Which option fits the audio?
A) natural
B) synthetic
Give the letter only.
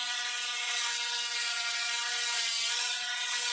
B